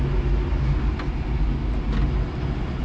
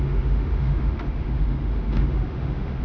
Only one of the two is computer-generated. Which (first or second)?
second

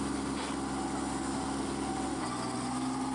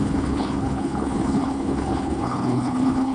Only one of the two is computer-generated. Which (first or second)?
second